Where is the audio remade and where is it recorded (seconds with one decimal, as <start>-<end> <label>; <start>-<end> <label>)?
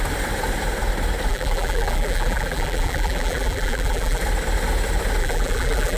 0.0-1.3 recorded; 1.3-4.2 remade; 4.2-5.2 recorded; 5.2-6.0 remade